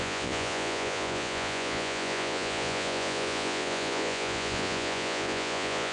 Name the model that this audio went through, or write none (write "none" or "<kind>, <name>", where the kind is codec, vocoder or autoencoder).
vocoder, Vocos